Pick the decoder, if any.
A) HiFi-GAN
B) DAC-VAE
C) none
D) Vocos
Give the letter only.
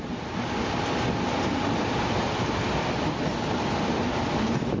C